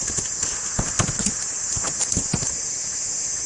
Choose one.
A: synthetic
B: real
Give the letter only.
B